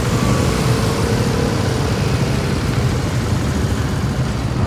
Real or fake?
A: real